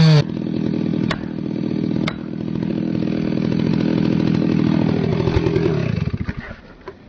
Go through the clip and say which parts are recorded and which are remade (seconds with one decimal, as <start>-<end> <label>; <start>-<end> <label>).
0.0-0.9 recorded; 0.9-1.7 remade; 1.7-7.1 recorded